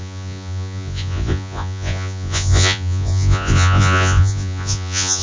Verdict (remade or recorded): remade